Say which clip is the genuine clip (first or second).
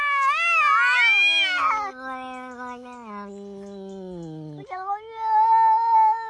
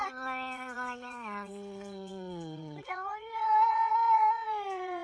first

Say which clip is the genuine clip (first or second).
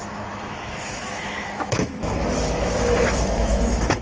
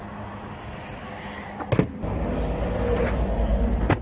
second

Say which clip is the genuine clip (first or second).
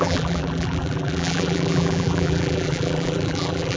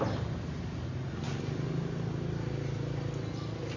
second